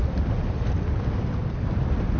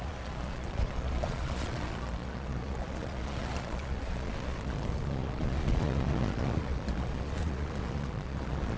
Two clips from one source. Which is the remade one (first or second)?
second